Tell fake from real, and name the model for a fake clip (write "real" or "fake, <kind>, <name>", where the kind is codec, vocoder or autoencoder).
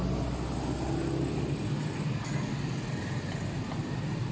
real